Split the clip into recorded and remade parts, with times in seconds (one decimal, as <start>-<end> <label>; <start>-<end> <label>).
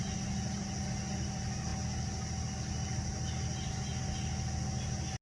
0.0-5.2 recorded